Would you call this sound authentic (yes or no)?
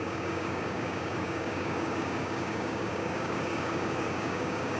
no